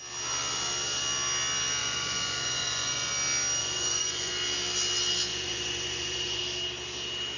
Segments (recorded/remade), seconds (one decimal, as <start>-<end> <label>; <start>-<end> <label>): 0.0-1.8 recorded; 1.8-3.1 remade; 3.1-3.6 recorded; 3.6-4.3 remade; 4.3-5.3 recorded; 5.3-6.4 remade; 6.4-7.4 recorded